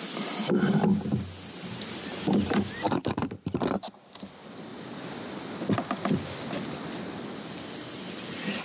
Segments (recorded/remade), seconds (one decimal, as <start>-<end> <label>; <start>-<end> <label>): 0.0-1.7 recorded; 1.7-3.8 remade; 3.8-8.6 recorded